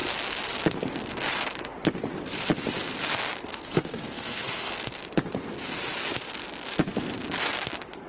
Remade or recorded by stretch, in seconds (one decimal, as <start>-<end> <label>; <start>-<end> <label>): 0.0-3.5 recorded; 3.5-4.7 remade; 4.7-8.1 recorded